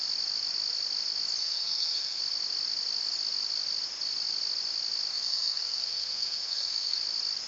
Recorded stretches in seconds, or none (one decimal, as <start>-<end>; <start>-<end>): 0.0-1.4; 2.2-5.1; 7.0-7.5